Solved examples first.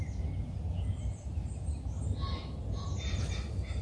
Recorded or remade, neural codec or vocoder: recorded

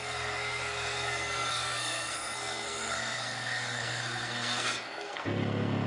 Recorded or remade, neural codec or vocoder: remade, codec, SNAC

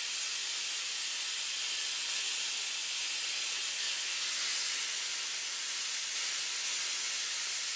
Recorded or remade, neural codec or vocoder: recorded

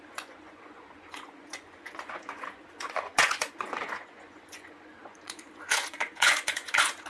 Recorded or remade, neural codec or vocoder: remade, vocoder, Vocos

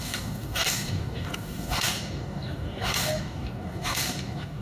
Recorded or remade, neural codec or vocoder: remade, codec, DAC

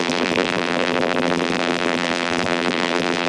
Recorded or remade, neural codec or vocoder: remade, vocoder, BigVGAN v2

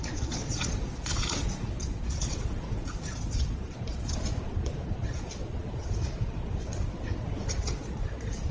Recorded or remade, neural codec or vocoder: remade, vocoder, Vocos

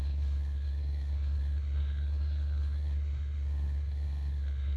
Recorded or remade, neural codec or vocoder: remade, codec, SNAC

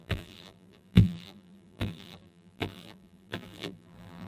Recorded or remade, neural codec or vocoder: remade, vocoder, BigVGAN v2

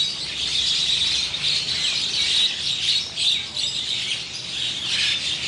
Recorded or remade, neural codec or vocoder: recorded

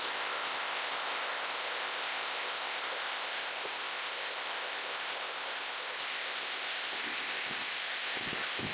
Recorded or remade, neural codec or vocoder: remade, codec, ZipCodec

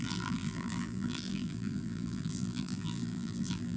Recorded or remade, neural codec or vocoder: remade, vocoder, BigVGAN v2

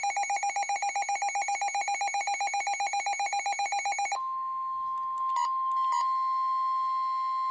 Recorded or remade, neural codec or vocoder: recorded